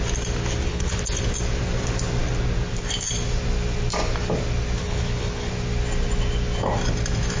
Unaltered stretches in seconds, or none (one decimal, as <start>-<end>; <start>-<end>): 0.0-0.7; 1.2-4.8; 5.5-7.4